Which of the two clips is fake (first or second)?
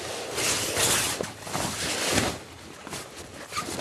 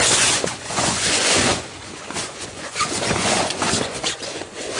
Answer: second